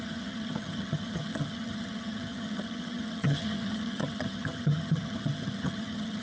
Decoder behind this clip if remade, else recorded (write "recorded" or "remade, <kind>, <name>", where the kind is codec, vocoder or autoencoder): remade, vocoder, HiFi-GAN